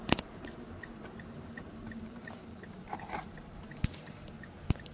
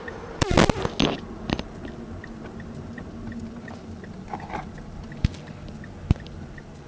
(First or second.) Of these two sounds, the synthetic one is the first